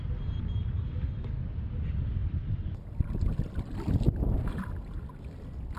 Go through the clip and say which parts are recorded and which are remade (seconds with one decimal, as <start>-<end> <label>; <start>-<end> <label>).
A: 0.0-2.2 recorded; 2.2-2.9 remade; 2.9-5.8 recorded